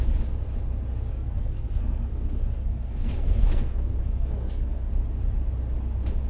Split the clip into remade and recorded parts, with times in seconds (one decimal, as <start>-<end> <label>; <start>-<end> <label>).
0.0-1.1 recorded; 1.1-4.9 remade; 4.9-6.3 recorded